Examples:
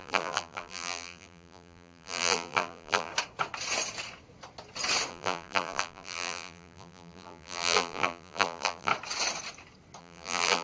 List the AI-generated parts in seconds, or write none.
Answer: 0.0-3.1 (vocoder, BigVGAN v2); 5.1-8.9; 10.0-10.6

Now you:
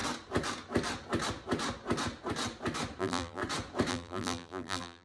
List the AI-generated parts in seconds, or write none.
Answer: 3.0-3.4 (vocoder, BigVGAN v2); 3.9-5.0

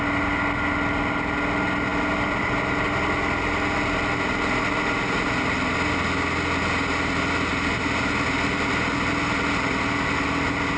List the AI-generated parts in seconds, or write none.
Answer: none

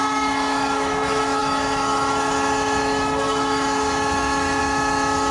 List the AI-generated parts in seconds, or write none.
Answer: 0.0-5.3 (autoencoder, DAC-VAE)

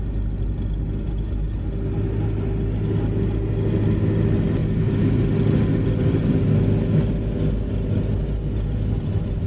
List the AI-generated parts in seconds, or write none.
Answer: none

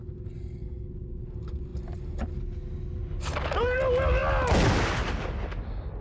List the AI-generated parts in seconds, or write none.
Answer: none

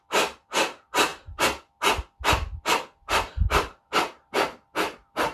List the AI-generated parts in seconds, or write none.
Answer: none

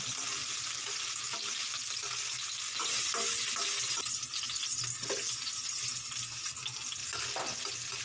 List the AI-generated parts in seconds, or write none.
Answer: none